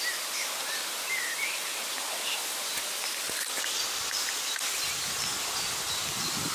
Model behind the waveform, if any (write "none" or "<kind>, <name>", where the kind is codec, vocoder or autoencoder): none